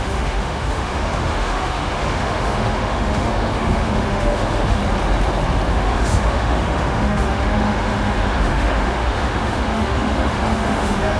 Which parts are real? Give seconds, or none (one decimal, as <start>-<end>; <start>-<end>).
4.8-5.7